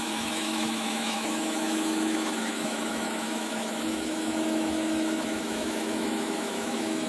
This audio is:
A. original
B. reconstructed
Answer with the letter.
B